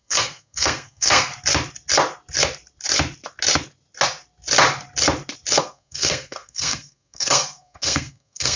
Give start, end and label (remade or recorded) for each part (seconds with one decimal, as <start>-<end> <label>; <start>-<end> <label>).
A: 0.0-1.3 remade; 1.3-5.6 recorded; 5.6-8.6 remade